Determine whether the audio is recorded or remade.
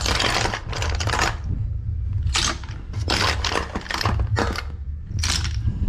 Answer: recorded